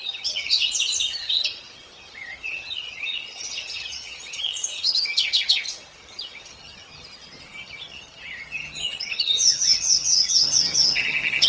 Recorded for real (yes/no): no